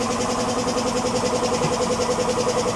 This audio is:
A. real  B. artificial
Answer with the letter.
A